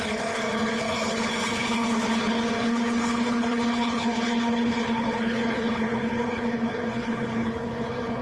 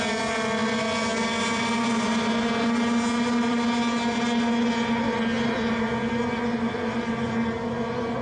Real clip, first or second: second